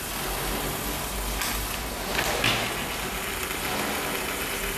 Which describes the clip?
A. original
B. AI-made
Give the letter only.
A